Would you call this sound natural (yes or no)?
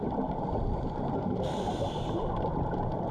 yes